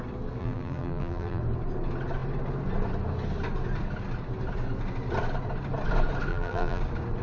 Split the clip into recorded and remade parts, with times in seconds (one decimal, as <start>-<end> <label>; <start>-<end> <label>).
0.0-0.4 recorded; 0.4-1.4 remade; 1.4-6.3 recorded; 6.3-6.8 remade; 6.8-7.2 recorded